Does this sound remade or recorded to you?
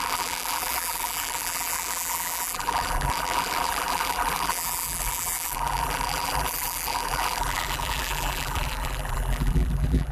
remade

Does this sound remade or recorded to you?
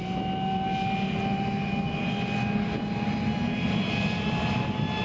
recorded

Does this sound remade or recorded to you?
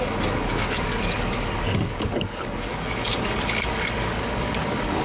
remade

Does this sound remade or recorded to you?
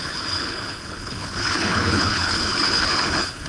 remade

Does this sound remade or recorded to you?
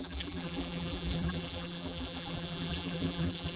remade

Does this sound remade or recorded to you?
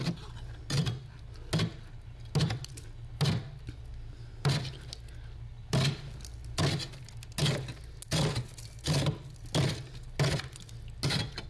recorded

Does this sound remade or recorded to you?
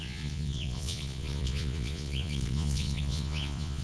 remade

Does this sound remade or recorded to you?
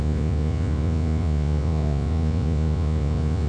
remade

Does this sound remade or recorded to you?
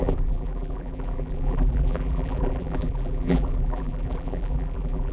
remade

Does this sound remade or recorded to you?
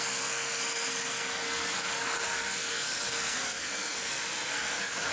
remade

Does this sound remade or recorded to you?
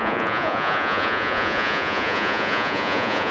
remade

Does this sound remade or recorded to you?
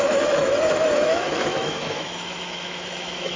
remade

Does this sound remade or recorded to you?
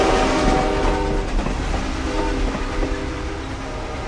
recorded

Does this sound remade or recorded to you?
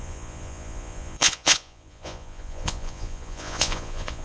remade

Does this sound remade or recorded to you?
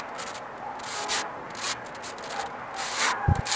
recorded